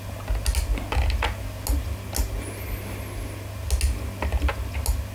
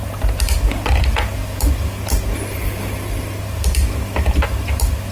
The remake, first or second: second